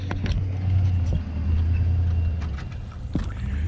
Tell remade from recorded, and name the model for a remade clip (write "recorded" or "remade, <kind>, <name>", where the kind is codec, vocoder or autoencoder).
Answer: recorded